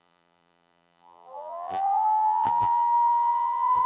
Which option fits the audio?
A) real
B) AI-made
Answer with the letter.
B